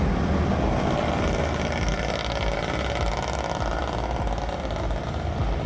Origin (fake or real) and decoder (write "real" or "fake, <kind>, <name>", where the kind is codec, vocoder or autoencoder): real